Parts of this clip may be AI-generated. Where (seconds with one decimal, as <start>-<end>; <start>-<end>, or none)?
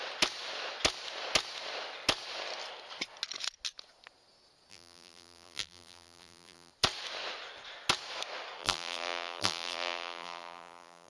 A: 4.7-6.7; 8.6-11.1